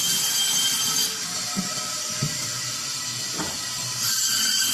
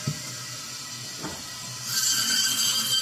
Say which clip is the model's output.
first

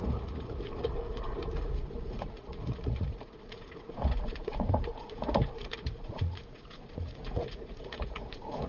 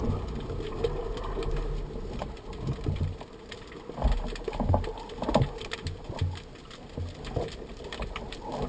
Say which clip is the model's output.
first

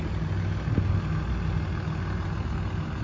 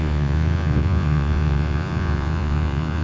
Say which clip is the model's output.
second